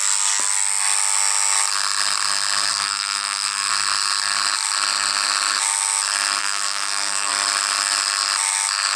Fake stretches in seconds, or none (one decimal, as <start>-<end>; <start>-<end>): 2.7-3.7; 6.4-7.3